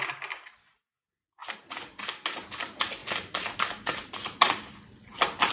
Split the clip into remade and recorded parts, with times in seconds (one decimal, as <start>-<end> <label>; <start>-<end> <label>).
0.0-5.5 recorded